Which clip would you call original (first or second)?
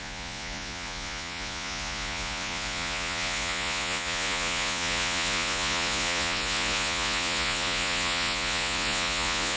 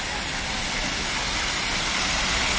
second